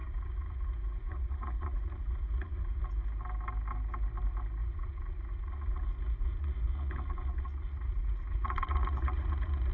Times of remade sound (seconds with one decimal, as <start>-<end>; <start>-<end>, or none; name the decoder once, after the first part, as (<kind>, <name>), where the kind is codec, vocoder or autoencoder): 0.0-2.8 (vocoder, Vocos); 4.6-9.7